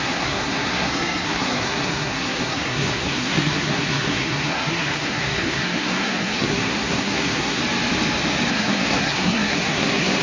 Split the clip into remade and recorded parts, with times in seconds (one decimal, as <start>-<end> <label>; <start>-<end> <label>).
0.0-7.6 remade; 7.6-8.5 recorded; 8.5-10.2 remade